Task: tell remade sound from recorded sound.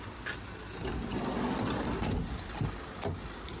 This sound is recorded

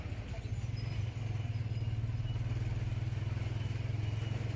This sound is recorded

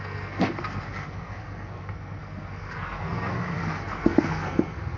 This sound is remade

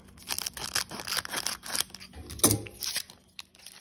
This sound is recorded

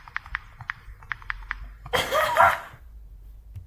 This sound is recorded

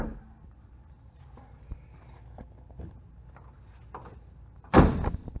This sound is recorded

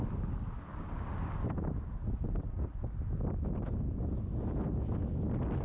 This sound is recorded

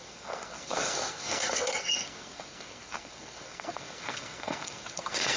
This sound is remade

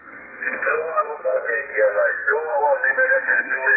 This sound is remade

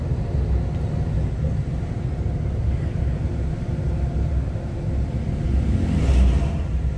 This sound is recorded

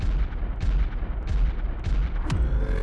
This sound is recorded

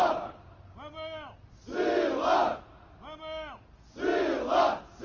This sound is recorded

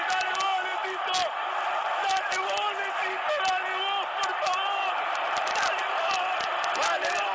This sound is recorded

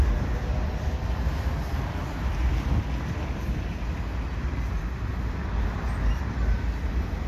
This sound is recorded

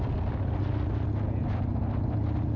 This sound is recorded